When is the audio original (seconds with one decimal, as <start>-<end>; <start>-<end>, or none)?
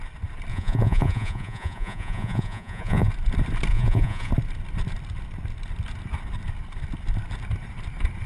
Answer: 0.0-0.5; 3.1-3.7; 4.3-8.3